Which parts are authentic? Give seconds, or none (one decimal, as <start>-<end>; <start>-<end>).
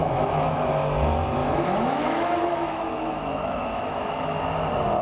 0.7-1.4; 4.4-5.0